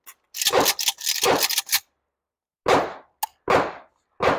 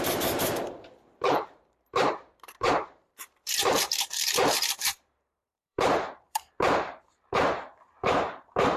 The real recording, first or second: first